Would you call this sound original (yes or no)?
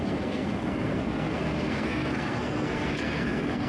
no